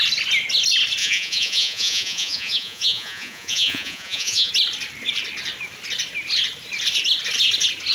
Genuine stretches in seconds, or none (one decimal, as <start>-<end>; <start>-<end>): 0.0-1.0; 4.5-7.9